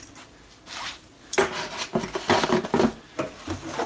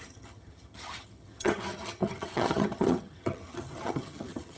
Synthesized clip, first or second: second